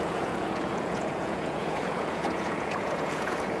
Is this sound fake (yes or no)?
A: yes